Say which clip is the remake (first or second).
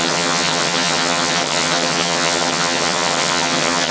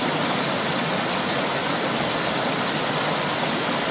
first